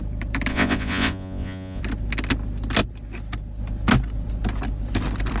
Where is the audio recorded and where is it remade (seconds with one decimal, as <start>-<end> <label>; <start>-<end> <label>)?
0.0-0.5 recorded; 0.5-1.8 remade; 1.8-5.4 recorded